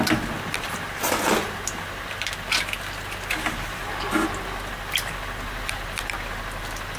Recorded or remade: recorded